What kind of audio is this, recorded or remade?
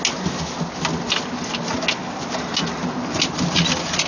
recorded